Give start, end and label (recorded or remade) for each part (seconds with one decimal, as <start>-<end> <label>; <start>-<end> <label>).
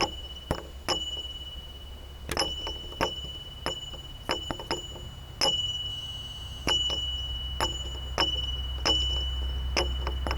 0.0-5.9 recorded; 5.9-6.7 remade; 6.7-10.4 recorded